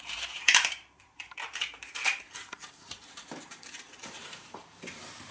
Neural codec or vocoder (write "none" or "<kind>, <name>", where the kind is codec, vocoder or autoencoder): vocoder, BigVGAN v2